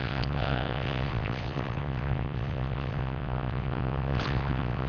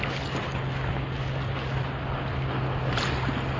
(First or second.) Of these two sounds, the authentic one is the second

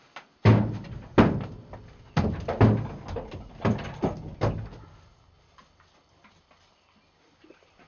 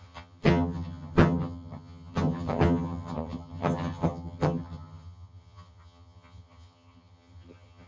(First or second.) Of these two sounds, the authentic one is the first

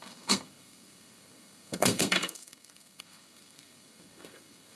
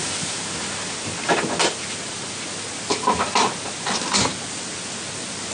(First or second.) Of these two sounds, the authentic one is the second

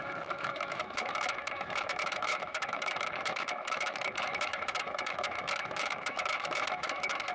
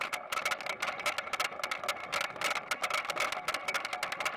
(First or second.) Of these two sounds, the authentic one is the second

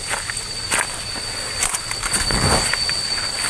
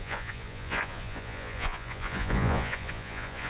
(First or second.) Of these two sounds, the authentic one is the first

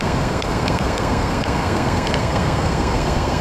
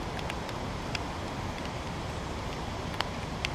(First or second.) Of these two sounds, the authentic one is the second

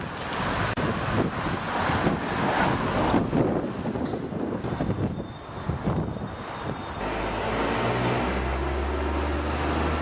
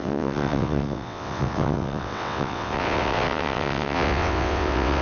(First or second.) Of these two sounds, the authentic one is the first